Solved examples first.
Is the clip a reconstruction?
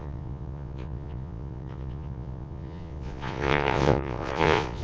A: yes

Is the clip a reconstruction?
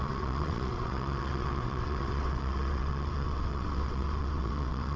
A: yes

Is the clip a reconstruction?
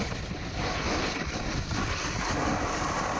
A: no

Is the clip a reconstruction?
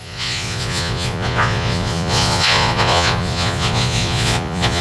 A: yes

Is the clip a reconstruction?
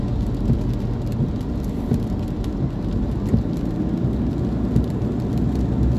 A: no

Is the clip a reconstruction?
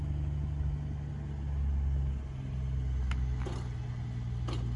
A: no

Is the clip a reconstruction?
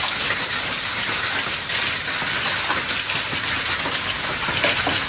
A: no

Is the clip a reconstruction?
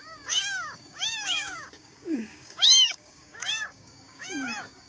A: yes